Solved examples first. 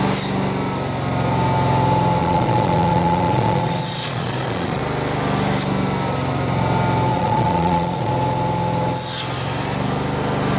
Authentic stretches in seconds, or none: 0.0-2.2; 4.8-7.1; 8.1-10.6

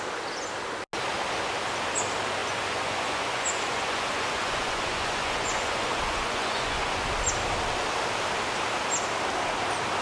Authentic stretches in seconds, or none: 0.0-2.4; 7.0-10.0